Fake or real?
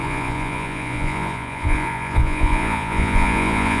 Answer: fake